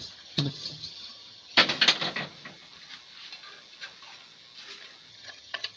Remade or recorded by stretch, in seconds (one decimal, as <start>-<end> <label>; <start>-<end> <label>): 0.0-1.6 remade; 1.6-5.1 recorded; 5.1-5.8 remade